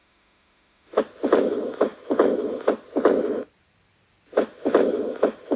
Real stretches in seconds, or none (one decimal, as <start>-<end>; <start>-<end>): 1.0-5.6